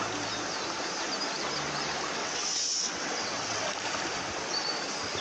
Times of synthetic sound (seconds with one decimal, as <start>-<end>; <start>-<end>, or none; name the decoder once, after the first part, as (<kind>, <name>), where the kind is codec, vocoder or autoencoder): 2.2-3.6 (vocoder, WaveNeXt)